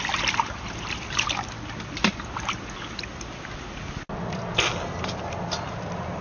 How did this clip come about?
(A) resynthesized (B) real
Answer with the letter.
B